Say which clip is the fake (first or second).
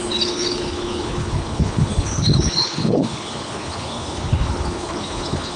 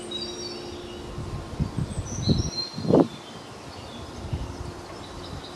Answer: first